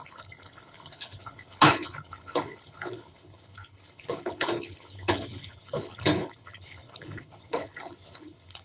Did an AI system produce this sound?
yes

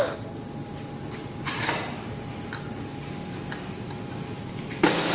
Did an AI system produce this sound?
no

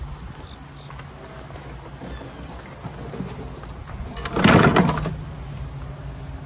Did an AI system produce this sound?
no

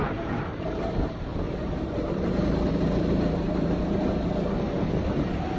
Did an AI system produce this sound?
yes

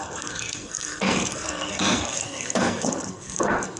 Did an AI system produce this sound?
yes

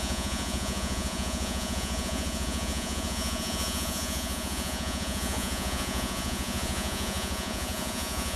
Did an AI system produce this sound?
yes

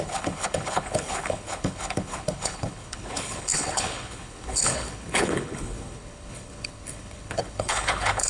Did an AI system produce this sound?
yes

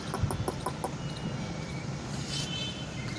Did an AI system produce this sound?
no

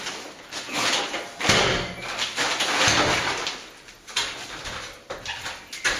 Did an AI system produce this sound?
no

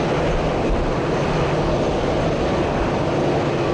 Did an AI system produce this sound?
no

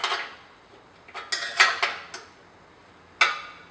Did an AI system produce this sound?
no